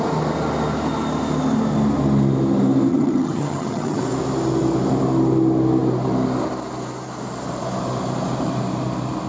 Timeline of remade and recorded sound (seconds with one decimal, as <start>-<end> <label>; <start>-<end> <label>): 0.0-2.9 recorded; 2.9-4.0 remade; 4.0-9.3 recorded